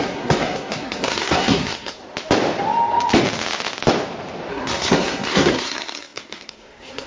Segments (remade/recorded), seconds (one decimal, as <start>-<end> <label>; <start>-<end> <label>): 0.0-2.0 remade; 2.0-4.5 recorded; 4.5-7.1 remade